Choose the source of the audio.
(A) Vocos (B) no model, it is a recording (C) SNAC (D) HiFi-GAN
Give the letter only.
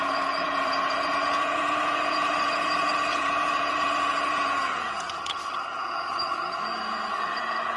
A